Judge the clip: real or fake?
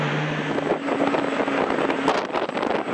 real